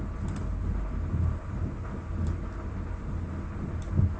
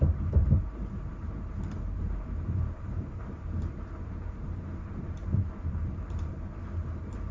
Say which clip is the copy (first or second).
second